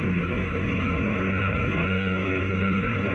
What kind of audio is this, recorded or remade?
remade